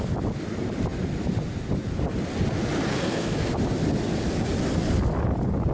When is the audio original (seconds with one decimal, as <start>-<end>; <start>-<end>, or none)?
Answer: 0.0-2.9; 3.5-5.7